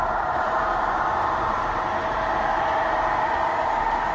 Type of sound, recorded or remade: remade